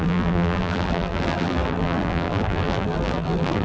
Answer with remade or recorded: remade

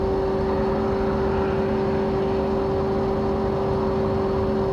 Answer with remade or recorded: recorded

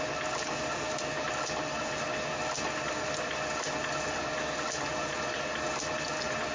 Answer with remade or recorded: recorded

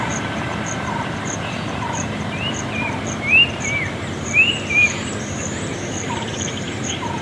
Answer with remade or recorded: remade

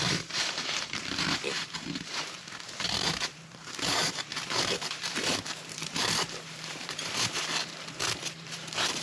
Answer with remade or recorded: remade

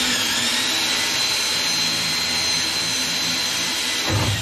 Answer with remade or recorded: remade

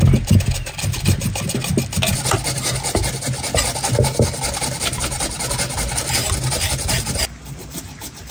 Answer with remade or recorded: recorded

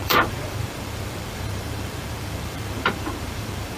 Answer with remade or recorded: remade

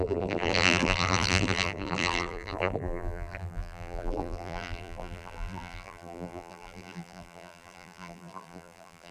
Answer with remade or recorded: remade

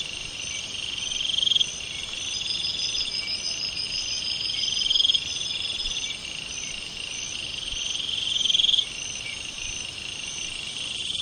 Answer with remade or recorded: remade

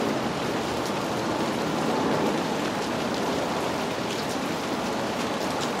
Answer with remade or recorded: recorded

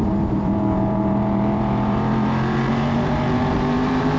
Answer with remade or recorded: remade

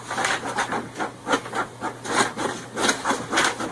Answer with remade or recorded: recorded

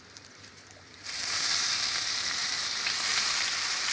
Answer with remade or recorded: remade